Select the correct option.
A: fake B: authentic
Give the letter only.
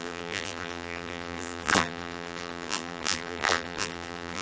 A